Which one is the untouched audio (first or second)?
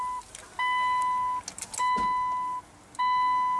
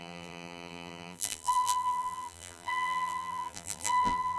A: first